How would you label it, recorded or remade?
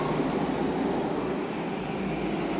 recorded